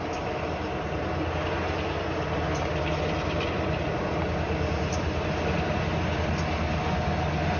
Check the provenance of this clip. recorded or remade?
recorded